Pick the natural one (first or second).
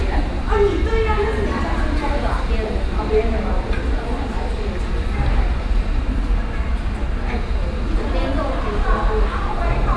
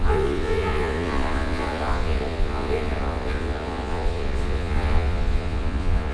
first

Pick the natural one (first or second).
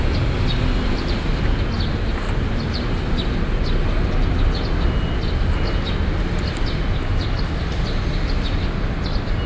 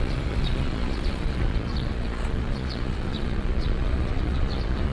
first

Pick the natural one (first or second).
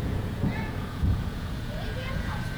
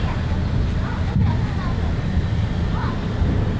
second